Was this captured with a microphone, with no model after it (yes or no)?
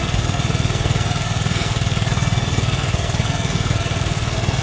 no